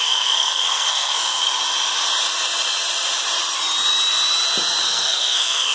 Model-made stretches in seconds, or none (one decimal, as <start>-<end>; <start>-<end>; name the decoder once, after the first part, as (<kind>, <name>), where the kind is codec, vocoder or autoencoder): 0.0-1.4 (codec, SNAC); 4.8-5.7